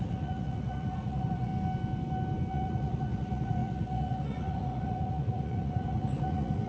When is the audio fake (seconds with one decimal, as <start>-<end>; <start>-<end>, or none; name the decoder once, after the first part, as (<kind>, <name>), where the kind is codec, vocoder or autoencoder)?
0.0-1.5 (vocoder, Vocos); 2.5-6.7